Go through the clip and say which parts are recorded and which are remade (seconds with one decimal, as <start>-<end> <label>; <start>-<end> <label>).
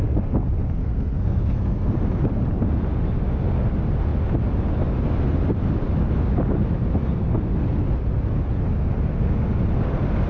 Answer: 0.0-0.8 recorded; 0.8-1.9 remade; 1.9-10.3 recorded